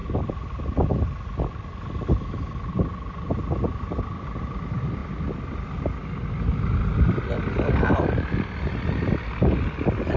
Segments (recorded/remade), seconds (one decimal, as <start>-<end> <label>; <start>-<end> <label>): 0.0-10.2 recorded